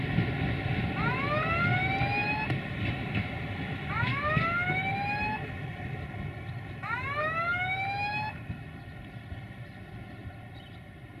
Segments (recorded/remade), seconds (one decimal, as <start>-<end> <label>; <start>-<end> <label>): 0.0-2.2 recorded; 2.2-3.8 remade; 3.8-10.2 recorded; 10.2-11.2 remade